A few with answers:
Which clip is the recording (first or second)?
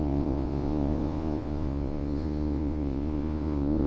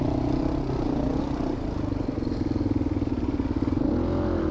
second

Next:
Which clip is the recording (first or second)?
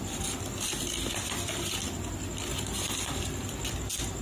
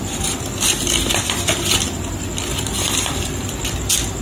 first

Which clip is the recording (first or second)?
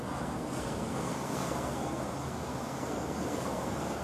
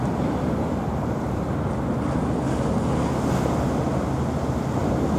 second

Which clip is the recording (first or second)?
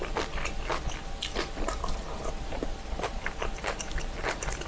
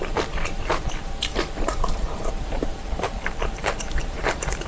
first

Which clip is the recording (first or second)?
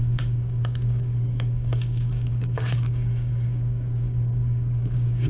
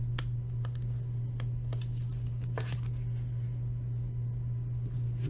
second